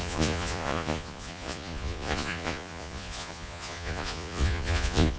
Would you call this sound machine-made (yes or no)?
yes